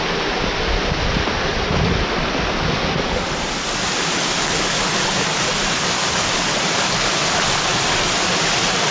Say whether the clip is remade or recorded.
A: recorded